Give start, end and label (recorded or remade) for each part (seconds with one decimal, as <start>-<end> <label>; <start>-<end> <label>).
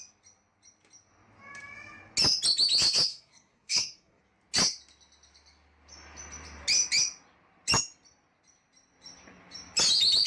0.0-3.1 recorded; 3.1-4.2 remade; 4.2-10.3 recorded